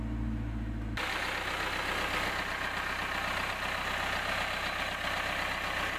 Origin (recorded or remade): recorded